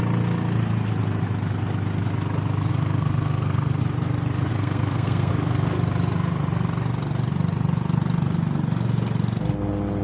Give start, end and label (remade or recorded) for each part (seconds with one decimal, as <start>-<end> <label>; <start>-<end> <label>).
0.0-2.7 recorded; 2.7-3.8 remade; 3.8-4.5 recorded; 4.5-5.3 remade; 5.3-10.0 recorded